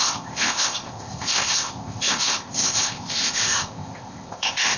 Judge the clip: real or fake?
fake